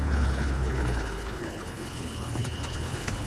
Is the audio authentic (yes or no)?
no